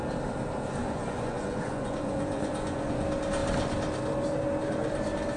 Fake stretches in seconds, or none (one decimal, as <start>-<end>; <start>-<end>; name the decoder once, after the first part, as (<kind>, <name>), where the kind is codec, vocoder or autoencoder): 0.8-3.0 (vocoder, Vocos)